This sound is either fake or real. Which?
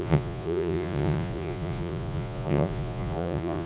fake